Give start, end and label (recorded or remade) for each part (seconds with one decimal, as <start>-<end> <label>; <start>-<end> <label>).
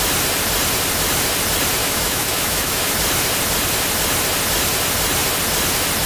0.0-1.8 recorded; 1.8-2.9 remade; 2.9-6.1 recorded